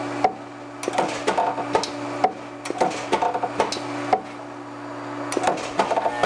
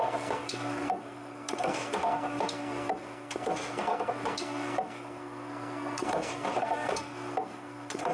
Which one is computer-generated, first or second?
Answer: second